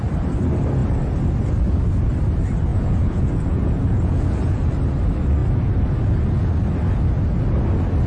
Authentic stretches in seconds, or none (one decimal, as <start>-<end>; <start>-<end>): 0.0-2.7; 4.6-8.1